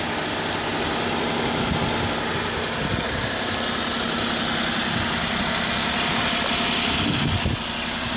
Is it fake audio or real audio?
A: real